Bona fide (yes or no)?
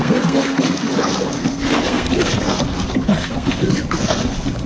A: no